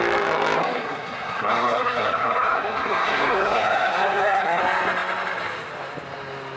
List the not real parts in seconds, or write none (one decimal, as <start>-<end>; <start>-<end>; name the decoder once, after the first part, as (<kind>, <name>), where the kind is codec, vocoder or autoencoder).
0.6-4.6 (codec, SNAC)